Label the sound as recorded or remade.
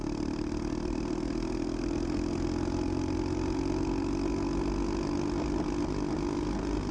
recorded